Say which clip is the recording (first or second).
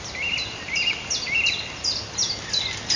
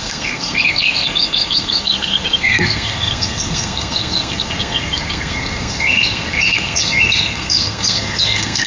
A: first